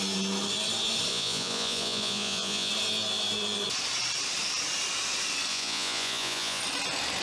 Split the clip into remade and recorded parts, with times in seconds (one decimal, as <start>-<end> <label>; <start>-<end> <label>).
0.0-1.1 recorded; 1.1-2.7 remade; 2.7-5.5 recorded; 5.5-6.6 remade; 6.6-7.2 recorded